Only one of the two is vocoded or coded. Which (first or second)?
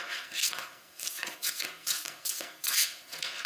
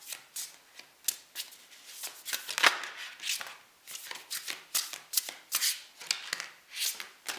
first